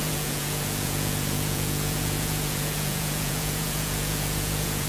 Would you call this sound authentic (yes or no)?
no